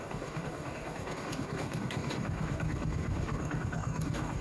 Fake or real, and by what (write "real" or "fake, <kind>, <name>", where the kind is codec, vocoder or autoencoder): fake, codec, DAC